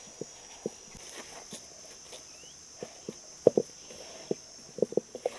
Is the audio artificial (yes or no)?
no